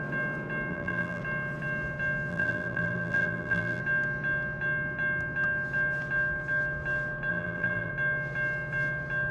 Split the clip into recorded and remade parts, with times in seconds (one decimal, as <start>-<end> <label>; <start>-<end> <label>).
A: 0.0-0.7 recorded; 0.7-1.2 remade; 1.2-2.3 recorded; 2.3-3.8 remade; 3.8-7.3 recorded; 7.3-7.9 remade; 7.9-9.3 recorded